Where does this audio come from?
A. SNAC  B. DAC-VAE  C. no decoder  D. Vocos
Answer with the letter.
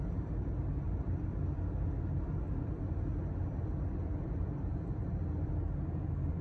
C